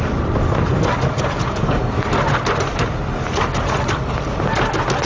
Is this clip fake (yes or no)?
no